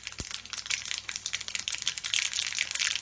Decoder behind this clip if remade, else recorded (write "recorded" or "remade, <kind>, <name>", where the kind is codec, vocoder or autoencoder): recorded